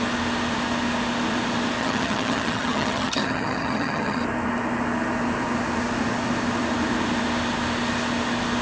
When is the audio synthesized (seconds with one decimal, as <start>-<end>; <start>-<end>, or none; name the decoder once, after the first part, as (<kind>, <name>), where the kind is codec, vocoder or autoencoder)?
1.8-4.2 (vocoder, HiFi-GAN)

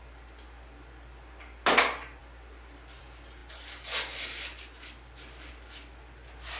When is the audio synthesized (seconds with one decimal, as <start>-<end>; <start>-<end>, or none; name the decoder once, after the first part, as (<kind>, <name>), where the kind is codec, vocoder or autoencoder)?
none

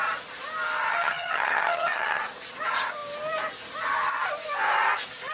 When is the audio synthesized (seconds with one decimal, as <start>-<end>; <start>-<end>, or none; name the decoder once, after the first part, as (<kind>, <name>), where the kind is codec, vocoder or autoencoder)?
0.9-2.2 (vocoder, HiFi-GAN)

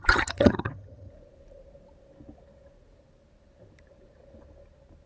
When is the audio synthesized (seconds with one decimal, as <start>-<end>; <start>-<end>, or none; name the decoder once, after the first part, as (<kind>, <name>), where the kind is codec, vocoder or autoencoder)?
0.0-1.1 (vocoder, HiFi-GAN)

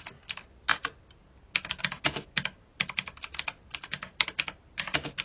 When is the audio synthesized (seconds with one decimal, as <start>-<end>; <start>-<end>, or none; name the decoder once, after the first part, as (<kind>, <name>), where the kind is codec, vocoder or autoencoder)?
none